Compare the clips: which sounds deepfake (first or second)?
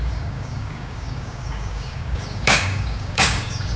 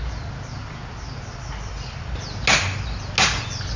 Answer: first